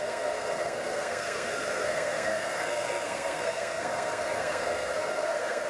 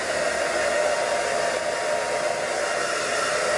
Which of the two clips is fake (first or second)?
first